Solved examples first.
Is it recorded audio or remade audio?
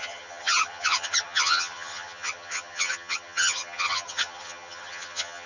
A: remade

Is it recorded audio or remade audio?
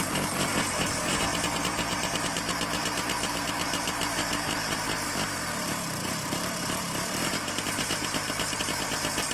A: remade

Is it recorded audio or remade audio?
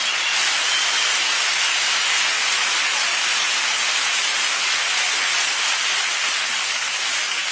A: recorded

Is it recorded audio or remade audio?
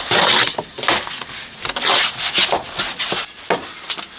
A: recorded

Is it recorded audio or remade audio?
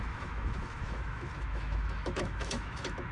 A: remade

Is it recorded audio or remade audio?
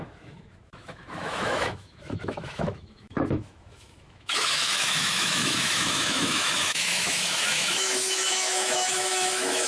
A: remade